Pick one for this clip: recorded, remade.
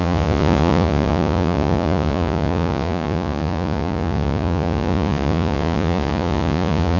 remade